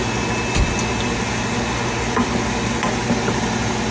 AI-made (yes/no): no